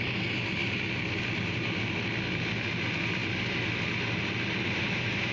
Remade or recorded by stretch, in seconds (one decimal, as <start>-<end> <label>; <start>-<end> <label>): 0.0-5.3 recorded